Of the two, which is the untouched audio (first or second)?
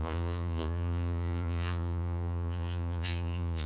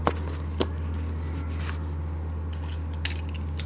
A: second